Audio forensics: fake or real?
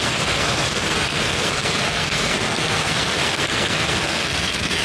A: fake